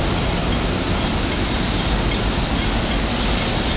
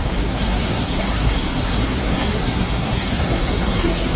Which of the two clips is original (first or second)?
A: first